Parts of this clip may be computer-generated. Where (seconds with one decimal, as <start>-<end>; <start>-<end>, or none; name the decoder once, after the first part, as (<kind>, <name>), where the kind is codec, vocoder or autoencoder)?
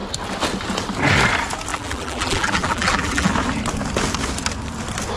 1.7-3.3 (vocoder, BigVGAN v2)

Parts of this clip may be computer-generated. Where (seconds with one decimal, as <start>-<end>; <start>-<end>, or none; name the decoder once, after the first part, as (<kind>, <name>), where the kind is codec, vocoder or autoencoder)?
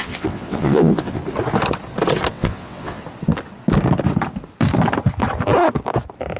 0.0-1.2 (vocoder, WaveNeXt); 2.3-3.0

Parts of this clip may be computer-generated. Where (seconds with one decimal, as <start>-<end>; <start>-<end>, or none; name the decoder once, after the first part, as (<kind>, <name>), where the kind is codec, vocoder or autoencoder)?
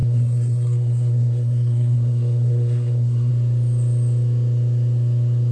0.0-3.3 (codec, SNAC)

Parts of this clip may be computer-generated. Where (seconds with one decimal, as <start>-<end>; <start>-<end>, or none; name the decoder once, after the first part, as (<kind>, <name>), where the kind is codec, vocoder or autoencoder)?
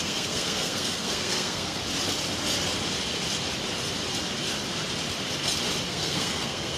0.0-1.8 (codec, SNAC); 5.9-6.8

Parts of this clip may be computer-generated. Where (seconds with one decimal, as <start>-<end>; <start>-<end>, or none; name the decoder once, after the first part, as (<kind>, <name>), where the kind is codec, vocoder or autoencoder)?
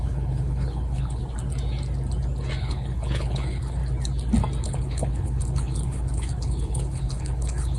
0.0-1.2 (codec, HILCodec); 2.6-3.8; 4.6-7.8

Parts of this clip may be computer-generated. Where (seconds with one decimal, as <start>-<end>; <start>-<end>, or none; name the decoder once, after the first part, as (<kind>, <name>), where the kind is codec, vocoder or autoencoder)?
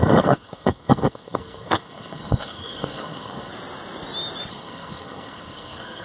0.0-3.5 (codec, SNAC); 4.5-6.0